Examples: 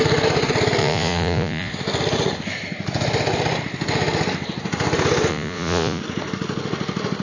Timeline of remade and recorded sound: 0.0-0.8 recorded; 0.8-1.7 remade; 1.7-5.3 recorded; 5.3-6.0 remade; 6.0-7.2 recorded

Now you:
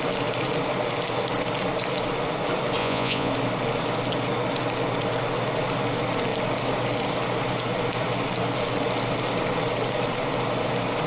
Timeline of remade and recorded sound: 0.0-2.8 recorded; 2.8-3.3 remade; 3.3-11.1 recorded

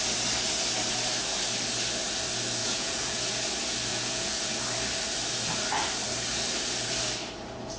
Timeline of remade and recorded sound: 0.0-2.6 recorded; 2.6-3.2 remade; 3.2-3.9 recorded; 3.9-4.5 remade; 4.5-7.8 recorded